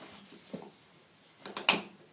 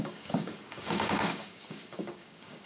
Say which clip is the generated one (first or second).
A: second